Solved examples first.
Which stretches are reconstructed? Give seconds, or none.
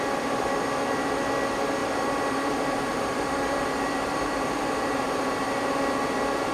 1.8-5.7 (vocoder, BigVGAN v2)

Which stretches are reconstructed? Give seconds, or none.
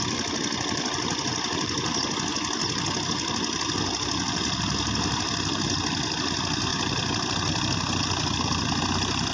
none